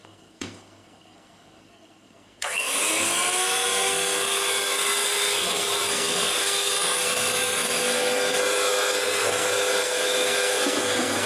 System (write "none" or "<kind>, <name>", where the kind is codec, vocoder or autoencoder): codec, SNAC